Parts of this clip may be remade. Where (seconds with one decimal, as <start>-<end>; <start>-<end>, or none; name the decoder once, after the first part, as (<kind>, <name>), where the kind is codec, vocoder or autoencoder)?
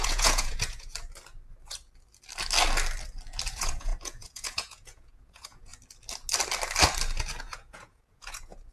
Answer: 0.0-0.9 (vocoder, Vocos); 3.5-5.7; 7.4-8.7